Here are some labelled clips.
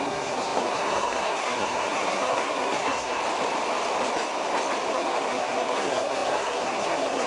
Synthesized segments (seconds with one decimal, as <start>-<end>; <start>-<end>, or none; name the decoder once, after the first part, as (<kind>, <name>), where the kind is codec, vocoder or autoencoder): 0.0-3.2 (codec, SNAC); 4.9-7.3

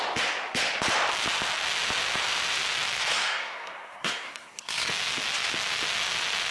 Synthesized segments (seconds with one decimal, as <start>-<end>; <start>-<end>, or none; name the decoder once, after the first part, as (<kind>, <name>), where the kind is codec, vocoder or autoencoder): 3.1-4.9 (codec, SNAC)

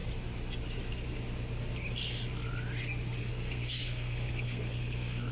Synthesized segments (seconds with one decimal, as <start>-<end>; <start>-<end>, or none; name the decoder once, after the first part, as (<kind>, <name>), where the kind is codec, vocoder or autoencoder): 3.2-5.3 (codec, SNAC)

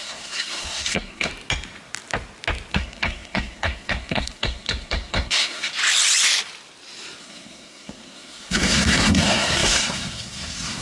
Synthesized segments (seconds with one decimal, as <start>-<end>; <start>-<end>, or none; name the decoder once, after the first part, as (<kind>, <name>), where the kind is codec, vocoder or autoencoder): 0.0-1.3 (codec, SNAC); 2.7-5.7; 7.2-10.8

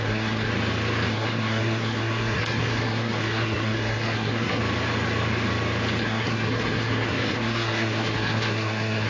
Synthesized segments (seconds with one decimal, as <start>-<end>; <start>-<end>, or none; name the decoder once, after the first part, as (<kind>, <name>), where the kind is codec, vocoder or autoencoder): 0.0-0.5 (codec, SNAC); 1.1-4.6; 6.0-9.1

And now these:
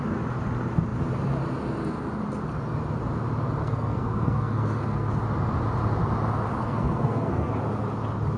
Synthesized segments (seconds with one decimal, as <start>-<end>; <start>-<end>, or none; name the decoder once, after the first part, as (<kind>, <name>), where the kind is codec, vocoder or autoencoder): 3.6-5.1 (codec, SNAC); 6.6-7.5

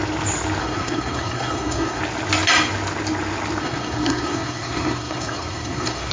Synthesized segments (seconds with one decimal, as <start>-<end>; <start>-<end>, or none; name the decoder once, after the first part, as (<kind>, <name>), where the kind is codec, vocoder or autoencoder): 0.6-2.0 (codec, SNAC); 3.6-6.1